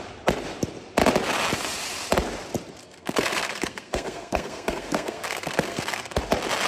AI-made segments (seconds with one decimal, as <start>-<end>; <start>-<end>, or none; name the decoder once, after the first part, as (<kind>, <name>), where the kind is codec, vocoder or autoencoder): 2.8-6.2 (codec, SNAC)

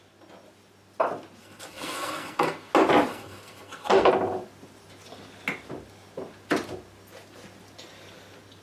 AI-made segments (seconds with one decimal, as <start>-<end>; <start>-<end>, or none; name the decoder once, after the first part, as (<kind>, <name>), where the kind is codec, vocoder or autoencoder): 1.4-2.7 (codec, SNAC); 3.1-4.1

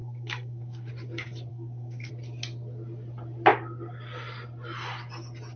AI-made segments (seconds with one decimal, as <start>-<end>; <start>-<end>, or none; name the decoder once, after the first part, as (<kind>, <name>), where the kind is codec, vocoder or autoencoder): 0.0-0.9 (codec, SNAC); 1.5-2.1

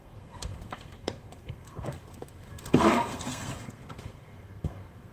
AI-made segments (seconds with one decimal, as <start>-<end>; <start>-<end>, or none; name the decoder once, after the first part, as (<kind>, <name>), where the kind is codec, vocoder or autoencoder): 0.0-5.1 (codec, SNAC)